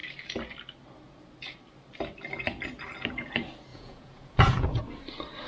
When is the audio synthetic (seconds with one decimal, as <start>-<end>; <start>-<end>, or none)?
3.7-4.8